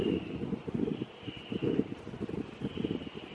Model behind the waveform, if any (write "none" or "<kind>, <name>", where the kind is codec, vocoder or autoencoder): none